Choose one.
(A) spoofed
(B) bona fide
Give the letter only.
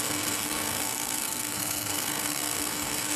A